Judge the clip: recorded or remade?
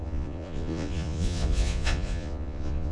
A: remade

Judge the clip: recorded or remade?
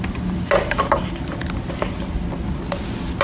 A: recorded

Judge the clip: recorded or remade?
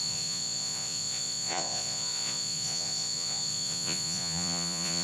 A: remade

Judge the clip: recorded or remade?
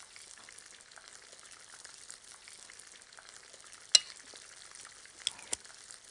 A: recorded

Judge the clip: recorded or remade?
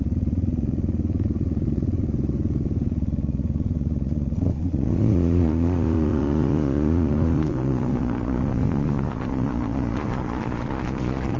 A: remade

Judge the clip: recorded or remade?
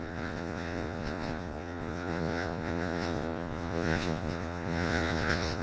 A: remade